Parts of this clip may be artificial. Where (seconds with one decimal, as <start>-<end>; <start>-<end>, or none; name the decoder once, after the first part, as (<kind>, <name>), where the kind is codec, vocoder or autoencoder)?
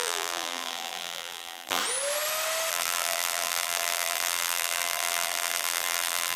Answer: 0.0-1.8 (vocoder, BigVGAN v2); 2.7-6.4